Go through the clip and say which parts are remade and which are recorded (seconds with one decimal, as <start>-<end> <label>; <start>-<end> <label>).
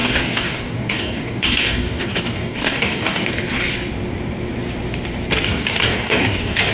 0.0-3.3 remade; 3.3-5.5 recorded; 5.5-6.7 remade